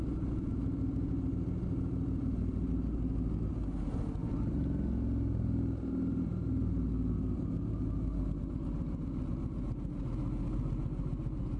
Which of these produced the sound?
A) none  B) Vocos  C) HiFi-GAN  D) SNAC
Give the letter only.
A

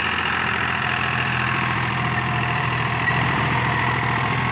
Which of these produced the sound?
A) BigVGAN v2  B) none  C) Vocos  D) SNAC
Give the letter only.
A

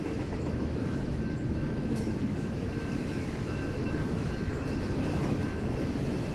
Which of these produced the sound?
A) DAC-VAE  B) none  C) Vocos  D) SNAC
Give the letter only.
A